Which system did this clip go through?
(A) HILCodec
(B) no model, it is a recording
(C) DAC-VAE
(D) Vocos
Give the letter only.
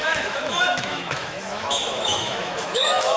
C